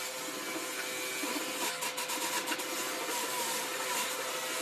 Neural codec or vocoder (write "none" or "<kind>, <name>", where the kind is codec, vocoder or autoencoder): none